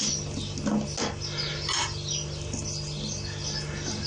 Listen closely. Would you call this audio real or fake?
real